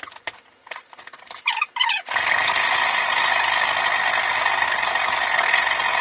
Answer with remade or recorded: recorded